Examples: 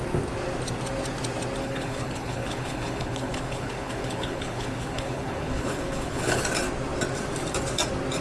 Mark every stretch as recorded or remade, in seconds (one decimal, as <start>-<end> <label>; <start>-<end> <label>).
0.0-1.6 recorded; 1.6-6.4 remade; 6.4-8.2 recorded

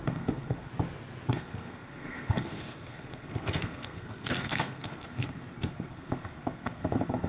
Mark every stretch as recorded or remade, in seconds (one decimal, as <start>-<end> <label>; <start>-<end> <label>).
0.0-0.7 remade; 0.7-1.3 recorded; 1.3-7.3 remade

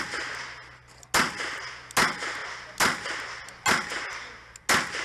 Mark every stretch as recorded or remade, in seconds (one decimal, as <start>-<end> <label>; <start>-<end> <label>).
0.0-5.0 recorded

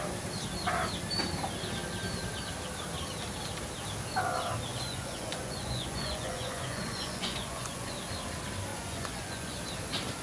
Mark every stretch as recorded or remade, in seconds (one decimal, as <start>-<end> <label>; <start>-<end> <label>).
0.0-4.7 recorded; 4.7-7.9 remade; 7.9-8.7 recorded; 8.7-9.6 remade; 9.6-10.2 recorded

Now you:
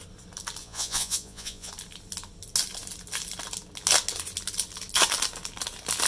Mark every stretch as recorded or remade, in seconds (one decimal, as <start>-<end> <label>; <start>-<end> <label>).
0.0-0.6 recorded; 0.6-1.7 remade; 1.7-6.1 recorded

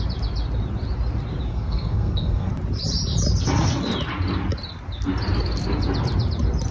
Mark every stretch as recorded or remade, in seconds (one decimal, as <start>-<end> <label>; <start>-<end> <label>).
0.0-1.5 recorded; 1.5-2.5 remade; 2.5-6.7 recorded

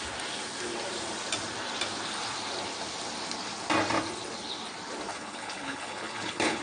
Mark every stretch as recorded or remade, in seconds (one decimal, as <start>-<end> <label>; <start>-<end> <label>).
0.0-5.1 recorded; 5.1-6.6 remade

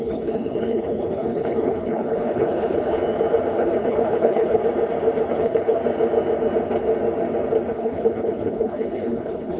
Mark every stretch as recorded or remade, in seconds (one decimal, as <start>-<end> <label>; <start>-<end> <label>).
0.0-3.0 remade; 3.0-3.5 recorded; 3.5-4.6 remade; 4.6-5.3 recorded; 5.3-5.8 remade; 5.8-7.7 recorded; 7.7-9.6 remade